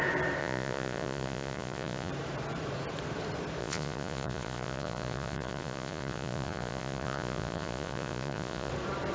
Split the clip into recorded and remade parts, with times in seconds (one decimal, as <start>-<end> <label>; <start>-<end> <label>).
0.0-0.4 recorded; 0.4-2.1 remade; 2.1-3.6 recorded; 3.6-8.7 remade; 8.7-9.1 recorded